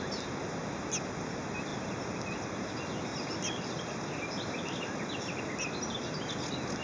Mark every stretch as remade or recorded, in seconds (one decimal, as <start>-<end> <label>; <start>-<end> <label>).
0.0-3.1 recorded; 3.1-5.4 remade; 5.4-6.8 recorded